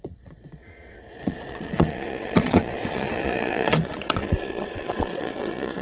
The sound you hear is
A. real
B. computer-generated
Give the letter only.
B